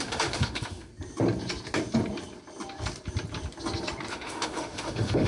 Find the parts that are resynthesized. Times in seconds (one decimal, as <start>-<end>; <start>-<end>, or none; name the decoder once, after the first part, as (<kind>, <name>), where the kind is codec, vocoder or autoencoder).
0.0-0.9 (autoencoder, DAC-VAE); 4.1-5.3